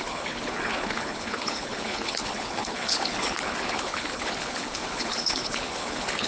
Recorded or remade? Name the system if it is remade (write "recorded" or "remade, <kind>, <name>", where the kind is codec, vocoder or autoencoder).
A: remade, codec, HILCodec